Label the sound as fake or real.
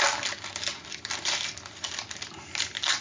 real